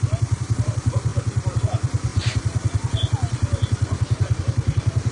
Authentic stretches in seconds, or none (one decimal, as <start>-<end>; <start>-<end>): 0.0-2.1; 4.4-5.1